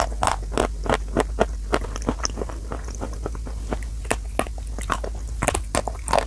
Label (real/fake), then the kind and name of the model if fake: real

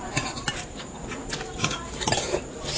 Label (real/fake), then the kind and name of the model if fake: real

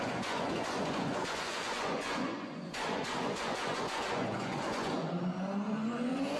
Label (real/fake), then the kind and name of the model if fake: fake, vocoder, Vocos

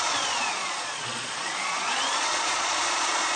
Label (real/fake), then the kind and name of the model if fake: fake, vocoder, Vocos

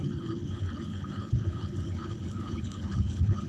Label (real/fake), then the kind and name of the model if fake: fake, codec, HILCodec